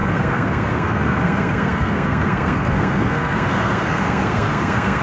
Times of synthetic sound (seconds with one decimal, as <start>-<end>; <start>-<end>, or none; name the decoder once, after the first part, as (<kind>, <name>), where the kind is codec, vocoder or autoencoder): 0.0-5.0 (codec, SNAC)